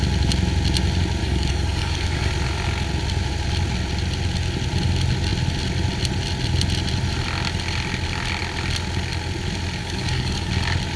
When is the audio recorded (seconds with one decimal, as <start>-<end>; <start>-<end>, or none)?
0.0-1.2; 2.3-9.8; 10.5-11.0